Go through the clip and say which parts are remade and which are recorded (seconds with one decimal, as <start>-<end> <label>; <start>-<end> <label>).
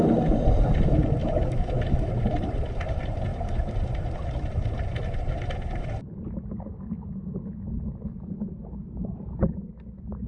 0.0-1.2 recorded; 1.2-2.1 remade; 2.1-10.3 recorded